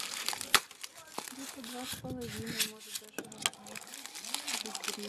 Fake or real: real